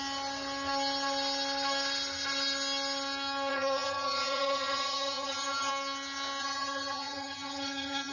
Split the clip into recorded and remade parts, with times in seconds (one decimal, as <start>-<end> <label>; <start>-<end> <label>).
0.0-3.5 recorded; 3.5-5.7 remade; 5.7-6.4 recorded; 6.4-8.1 remade